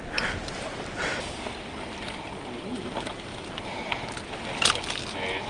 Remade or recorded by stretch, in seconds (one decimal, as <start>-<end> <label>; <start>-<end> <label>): 0.0-5.5 recorded